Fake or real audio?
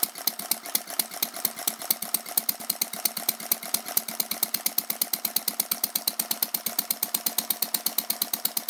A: real